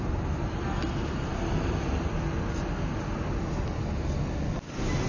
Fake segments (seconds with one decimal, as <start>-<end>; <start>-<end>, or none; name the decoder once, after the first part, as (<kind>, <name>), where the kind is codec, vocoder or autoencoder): none